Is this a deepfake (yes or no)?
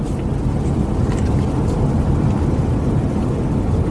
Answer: no